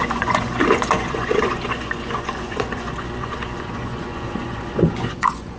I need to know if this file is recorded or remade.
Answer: remade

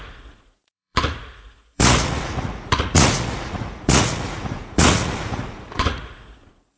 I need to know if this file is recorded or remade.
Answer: remade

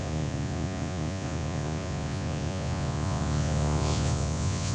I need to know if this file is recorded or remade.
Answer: remade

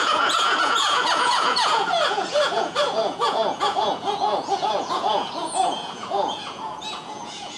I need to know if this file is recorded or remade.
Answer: remade